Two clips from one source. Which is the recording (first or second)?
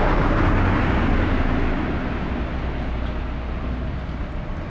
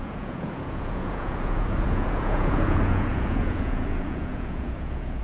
first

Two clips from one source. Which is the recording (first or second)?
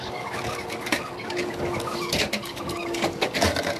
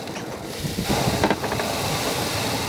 second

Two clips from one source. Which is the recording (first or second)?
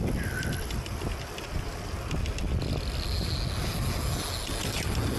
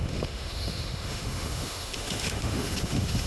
first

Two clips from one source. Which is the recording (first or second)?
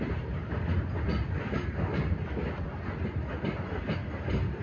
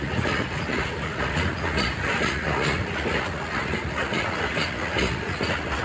first